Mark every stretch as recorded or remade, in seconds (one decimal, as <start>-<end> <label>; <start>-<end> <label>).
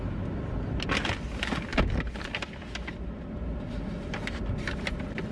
0.0-5.3 recorded